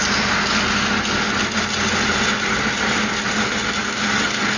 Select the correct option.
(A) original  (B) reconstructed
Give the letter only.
A